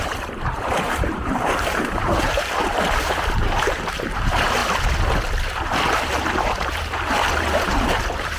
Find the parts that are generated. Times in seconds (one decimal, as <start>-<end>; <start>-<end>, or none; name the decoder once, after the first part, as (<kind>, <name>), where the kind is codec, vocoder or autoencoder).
0.0-4.6 (vocoder, BigVGAN v2); 6.0-8.4